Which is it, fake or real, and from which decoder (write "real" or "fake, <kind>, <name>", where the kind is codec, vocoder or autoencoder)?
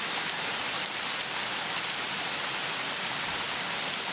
real